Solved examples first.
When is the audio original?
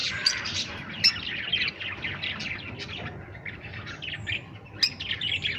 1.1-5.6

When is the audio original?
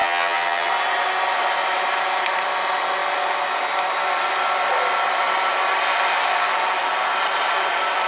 0.7-8.1